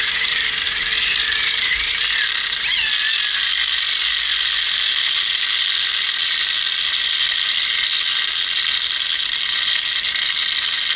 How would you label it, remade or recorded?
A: recorded